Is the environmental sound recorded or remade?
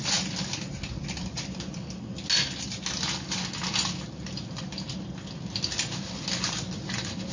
recorded